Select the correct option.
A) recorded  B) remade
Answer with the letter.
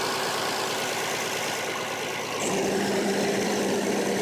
B